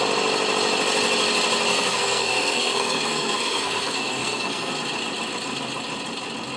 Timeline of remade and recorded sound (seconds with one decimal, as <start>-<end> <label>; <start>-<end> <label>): 0.0-1.7 recorded; 1.7-4.7 remade; 4.7-6.6 recorded